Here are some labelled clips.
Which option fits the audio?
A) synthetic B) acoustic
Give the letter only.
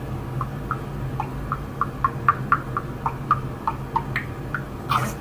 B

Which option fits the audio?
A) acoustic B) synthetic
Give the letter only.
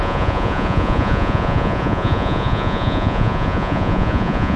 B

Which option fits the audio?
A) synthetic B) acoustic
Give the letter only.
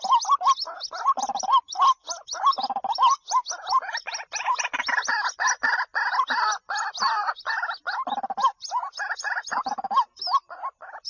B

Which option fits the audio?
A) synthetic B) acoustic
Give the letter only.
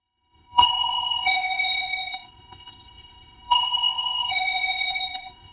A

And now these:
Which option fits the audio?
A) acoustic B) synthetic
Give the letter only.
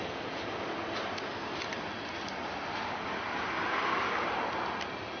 A